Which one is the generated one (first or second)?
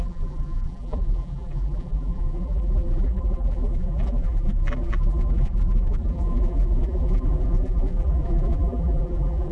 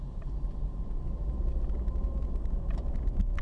first